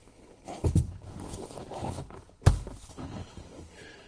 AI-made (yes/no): yes